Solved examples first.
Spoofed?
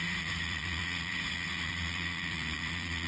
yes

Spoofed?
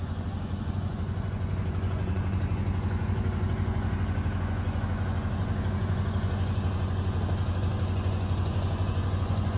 yes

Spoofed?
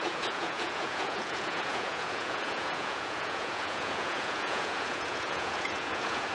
yes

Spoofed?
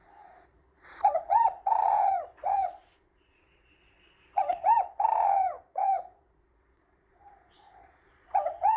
yes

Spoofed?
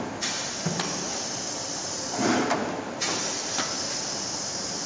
no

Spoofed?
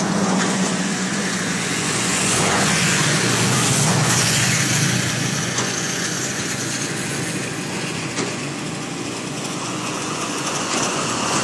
yes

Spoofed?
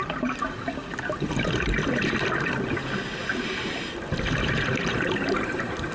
no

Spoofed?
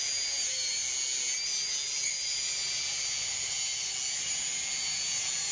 no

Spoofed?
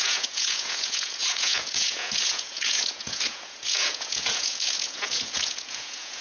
yes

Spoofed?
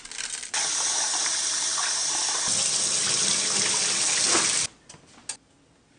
no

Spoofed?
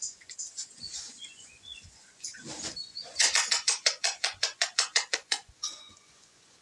yes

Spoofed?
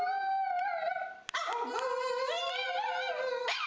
no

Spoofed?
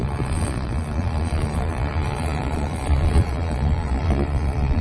yes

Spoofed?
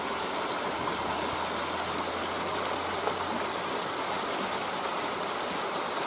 no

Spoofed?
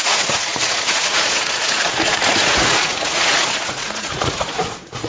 yes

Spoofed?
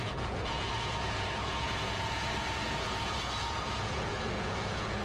yes